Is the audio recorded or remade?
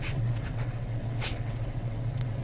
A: remade